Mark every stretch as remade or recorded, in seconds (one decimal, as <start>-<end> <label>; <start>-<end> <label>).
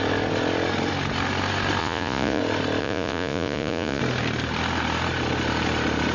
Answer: 0.0-1.8 recorded; 1.8-2.4 remade; 2.4-2.8 recorded; 2.8-4.0 remade; 4.0-6.1 recorded